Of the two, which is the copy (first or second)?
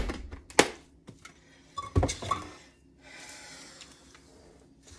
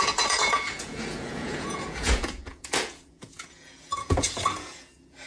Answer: second